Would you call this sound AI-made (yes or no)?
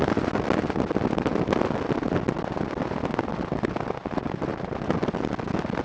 no